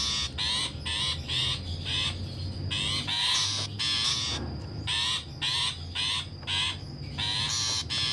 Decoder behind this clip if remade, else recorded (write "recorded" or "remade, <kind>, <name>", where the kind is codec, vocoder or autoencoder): recorded